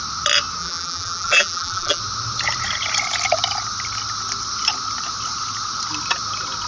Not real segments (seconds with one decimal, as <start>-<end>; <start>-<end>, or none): 0.6-2.0